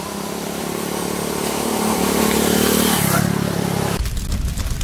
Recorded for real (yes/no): no